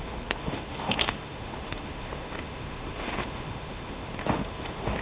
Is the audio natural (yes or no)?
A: no